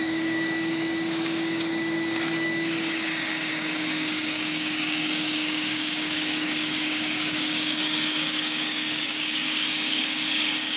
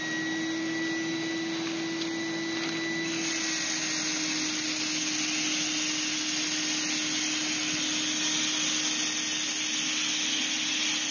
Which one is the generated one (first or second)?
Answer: first